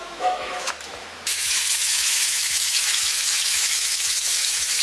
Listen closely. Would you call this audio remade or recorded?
remade